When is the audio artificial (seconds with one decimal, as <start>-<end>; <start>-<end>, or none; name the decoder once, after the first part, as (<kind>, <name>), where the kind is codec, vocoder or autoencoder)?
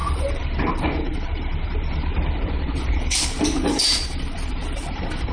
0.0-5.3 (vocoder, BigVGAN v2)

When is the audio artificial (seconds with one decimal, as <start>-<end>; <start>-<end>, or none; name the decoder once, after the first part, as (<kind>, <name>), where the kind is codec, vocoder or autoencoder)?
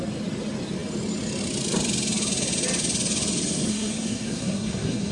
3.7-5.1 (codec, SNAC)